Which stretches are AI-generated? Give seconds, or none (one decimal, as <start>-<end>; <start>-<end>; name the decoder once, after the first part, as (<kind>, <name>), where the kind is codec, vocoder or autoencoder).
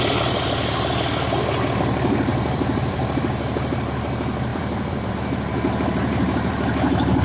2.3-3.2 (vocoder, BigVGAN v2); 4.5-5.1